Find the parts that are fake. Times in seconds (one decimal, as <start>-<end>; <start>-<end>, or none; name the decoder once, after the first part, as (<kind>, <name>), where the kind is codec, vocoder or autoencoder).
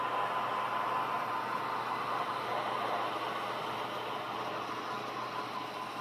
none